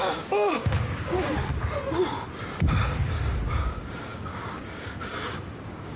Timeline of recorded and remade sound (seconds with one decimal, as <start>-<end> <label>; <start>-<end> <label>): 0.0-1.4 remade; 1.4-3.5 recorded; 3.5-6.0 remade